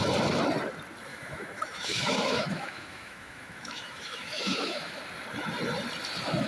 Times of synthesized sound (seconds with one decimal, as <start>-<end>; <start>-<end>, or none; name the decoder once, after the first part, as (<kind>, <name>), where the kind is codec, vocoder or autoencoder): 1.1-5.0 (autoencoder, DAC-VAE)